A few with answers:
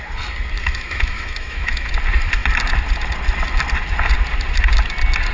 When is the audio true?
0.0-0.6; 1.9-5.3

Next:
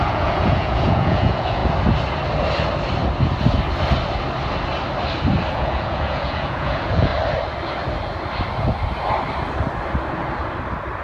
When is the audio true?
1.6-5.5; 7.1-11.0

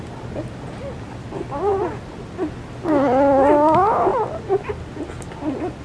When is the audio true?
0.0-5.8